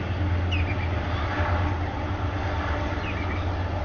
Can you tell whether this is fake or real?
real